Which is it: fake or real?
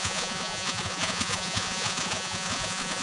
fake